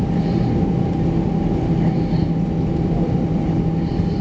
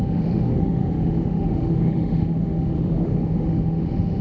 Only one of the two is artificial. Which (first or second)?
second